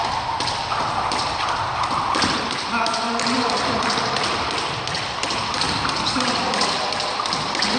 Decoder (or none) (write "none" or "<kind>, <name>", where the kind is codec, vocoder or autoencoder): vocoder, BigVGAN v2